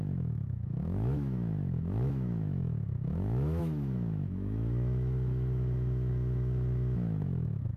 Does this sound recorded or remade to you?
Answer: remade